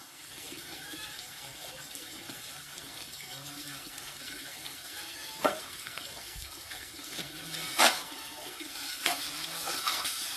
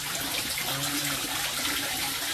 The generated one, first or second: first